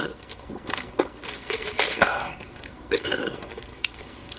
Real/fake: fake